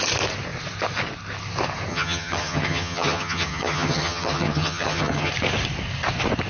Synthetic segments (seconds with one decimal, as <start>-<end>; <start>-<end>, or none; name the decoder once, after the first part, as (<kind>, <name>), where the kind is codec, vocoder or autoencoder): 1.9-5.3 (vocoder, HiFi-GAN)